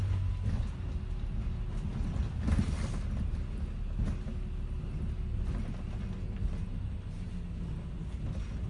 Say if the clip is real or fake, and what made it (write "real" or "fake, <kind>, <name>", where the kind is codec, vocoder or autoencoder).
real